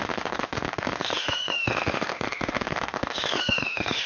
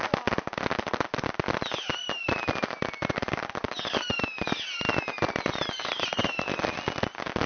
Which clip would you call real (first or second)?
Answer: second